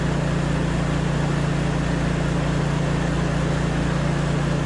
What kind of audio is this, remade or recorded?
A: recorded